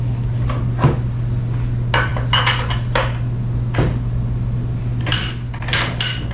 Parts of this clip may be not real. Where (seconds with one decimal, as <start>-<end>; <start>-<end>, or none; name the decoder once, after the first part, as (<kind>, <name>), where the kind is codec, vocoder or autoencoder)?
none